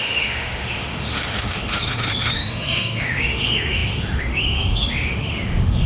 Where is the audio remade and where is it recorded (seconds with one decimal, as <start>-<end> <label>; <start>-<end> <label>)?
0.0-5.9 remade